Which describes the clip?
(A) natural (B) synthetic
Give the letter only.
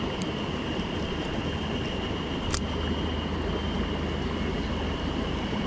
A